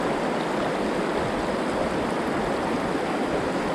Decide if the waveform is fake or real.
real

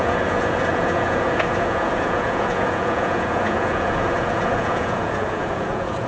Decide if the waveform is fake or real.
fake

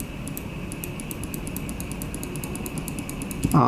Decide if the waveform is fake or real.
real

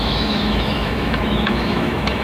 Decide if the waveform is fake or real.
fake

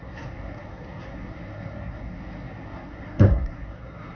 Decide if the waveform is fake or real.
fake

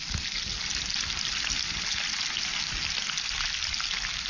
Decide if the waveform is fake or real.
real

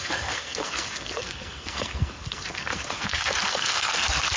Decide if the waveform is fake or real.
fake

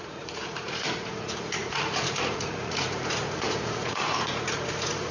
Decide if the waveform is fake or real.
fake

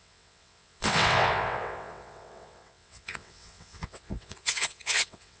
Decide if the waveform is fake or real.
fake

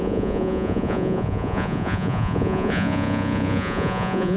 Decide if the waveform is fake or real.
fake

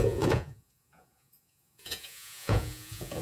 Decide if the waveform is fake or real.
fake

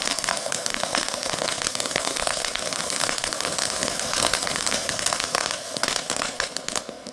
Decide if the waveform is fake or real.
fake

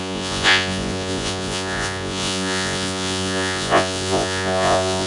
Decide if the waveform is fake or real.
fake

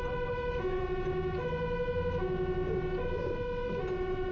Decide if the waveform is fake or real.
real